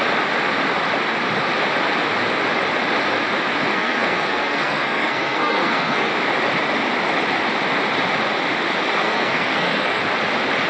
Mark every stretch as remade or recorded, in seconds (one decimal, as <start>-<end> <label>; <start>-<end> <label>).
0.0-3.7 recorded; 3.7-6.1 remade; 6.1-9.0 recorded; 9.0-10.0 remade; 10.0-10.7 recorded